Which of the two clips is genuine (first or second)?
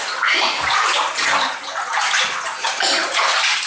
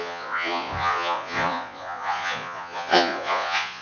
first